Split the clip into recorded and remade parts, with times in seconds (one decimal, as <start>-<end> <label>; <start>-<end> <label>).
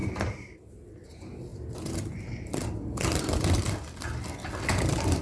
0.0-0.7 remade; 0.7-5.2 recorded